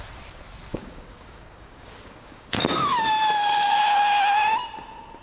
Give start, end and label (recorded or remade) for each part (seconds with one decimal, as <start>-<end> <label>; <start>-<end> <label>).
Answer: 0.0-0.7 recorded; 0.7-2.5 remade; 2.5-2.9 recorded; 2.9-3.8 remade; 3.8-5.2 recorded